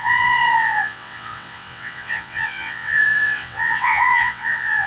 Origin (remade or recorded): remade